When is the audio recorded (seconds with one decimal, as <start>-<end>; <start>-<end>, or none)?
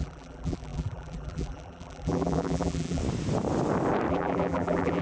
3.0-4.1